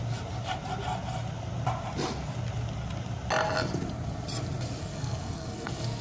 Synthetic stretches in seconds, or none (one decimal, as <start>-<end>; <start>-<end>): 4.8-6.0